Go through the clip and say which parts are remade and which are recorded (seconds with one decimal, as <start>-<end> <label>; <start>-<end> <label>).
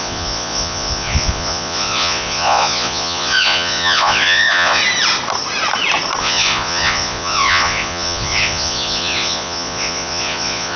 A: 0.0-4.8 remade; 4.8-6.2 recorded; 6.2-10.8 remade